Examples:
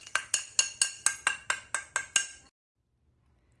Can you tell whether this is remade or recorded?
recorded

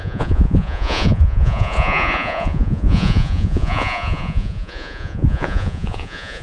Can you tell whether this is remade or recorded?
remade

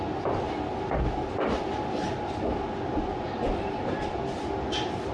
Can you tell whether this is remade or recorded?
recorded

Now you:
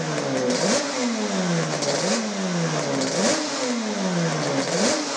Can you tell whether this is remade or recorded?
recorded